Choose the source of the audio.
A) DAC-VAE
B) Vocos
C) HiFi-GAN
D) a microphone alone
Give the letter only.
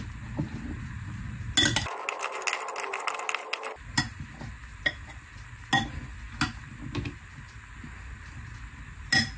D